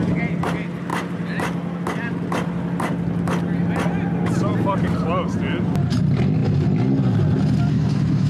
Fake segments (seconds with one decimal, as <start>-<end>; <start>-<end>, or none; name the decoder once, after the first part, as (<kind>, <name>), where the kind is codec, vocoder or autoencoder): 7.7-8.3 (codec, DAC)